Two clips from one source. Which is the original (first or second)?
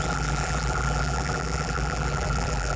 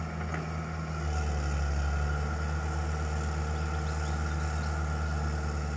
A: second